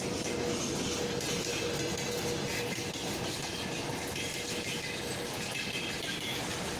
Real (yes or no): yes